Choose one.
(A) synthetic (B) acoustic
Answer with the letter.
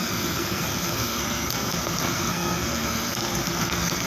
A